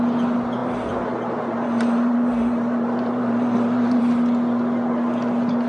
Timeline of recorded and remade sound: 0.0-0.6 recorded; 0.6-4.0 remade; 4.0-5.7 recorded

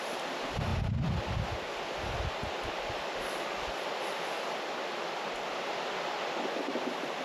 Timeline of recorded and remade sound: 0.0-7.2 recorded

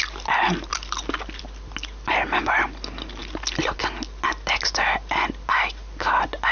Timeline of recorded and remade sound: 0.0-6.5 recorded

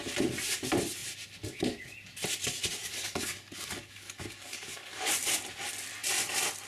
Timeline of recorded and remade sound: 0.0-2.8 recorded; 2.8-5.1 remade; 5.1-6.7 recorded

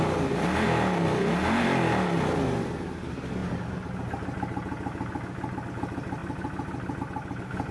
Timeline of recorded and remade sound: 0.0-7.7 recorded

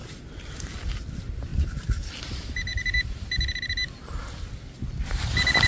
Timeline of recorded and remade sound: 0.0-2.7 recorded; 2.7-3.3 remade; 3.3-5.7 recorded